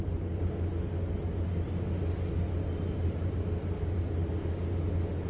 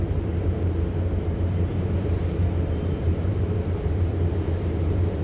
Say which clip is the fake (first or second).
second